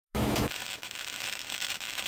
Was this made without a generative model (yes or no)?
no